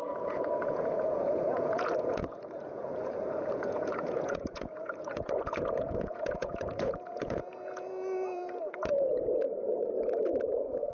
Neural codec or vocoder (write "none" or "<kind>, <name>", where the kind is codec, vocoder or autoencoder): vocoder, Vocos